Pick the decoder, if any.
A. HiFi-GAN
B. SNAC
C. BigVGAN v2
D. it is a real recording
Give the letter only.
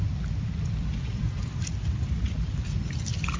D